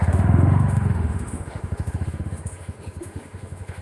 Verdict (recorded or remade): remade